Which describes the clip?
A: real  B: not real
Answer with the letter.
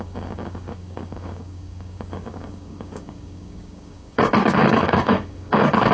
B